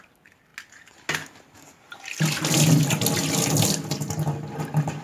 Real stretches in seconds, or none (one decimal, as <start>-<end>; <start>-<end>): 0.0-5.0